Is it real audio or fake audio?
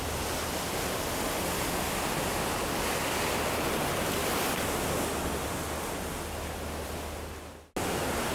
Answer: real